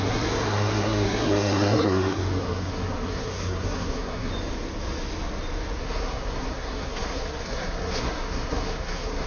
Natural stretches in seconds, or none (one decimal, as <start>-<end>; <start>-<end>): 4.3-5.8

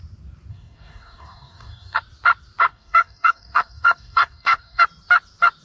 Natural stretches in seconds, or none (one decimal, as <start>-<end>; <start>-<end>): 0.0-0.5; 2.0-2.7; 4.8-5.6

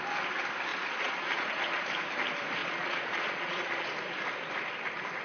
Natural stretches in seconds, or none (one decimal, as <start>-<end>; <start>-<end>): 0.0-0.7; 1.9-2.6; 3.9-5.2

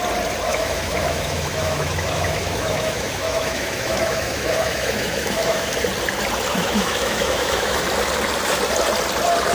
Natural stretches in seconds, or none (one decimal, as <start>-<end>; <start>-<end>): 0.0-0.5; 5.8-6.5; 7.8-9.5

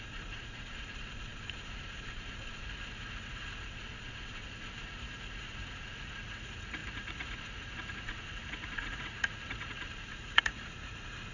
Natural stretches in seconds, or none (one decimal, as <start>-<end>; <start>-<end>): none

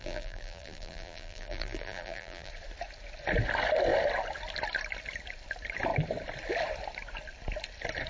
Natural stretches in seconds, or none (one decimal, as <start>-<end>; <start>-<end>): 2.5-8.1

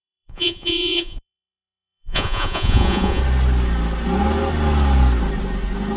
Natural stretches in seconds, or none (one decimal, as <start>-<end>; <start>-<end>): 3.2-6.0